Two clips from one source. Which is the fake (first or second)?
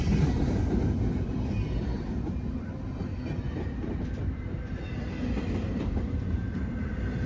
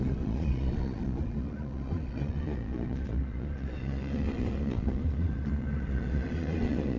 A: second